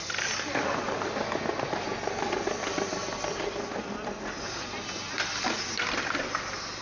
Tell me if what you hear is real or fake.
real